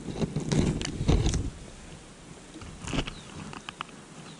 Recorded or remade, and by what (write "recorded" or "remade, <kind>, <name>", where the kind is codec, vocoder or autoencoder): recorded